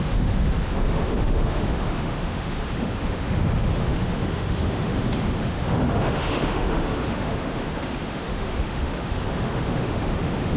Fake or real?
fake